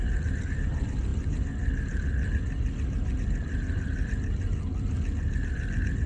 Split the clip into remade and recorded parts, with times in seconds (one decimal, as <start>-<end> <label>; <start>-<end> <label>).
0.0-6.1 recorded